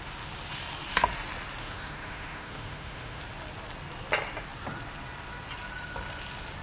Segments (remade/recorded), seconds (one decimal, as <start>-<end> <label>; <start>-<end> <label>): 0.0-1.6 recorded; 1.6-3.2 remade; 3.2-6.6 recorded